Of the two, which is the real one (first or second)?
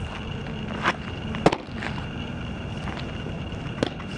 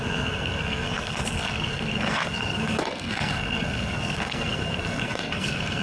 first